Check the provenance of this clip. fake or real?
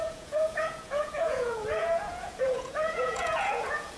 fake